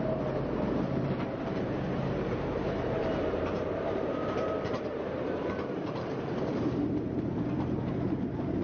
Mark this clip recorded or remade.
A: remade